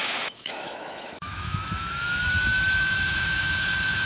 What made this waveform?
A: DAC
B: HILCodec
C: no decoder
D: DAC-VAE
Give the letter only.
D